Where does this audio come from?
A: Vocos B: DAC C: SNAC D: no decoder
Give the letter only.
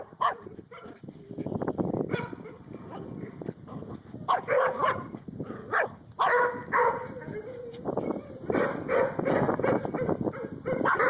D